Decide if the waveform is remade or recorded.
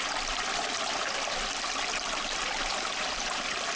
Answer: recorded